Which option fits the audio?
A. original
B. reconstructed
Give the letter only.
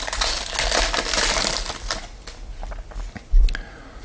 A